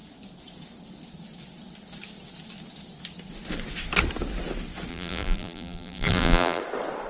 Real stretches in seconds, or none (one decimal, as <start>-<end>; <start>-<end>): 0.0-4.9; 6.6-7.1